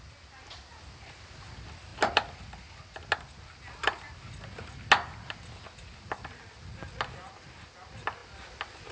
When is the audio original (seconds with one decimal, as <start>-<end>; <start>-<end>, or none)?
0.0-8.9